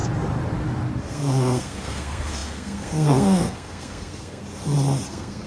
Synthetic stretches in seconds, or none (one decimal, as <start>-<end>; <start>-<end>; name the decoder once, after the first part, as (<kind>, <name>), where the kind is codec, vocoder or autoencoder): 1.0-4.4 (codec, SNAC); 5.1-5.5